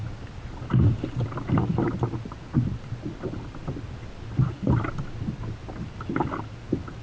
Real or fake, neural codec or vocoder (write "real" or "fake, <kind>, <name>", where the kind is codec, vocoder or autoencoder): real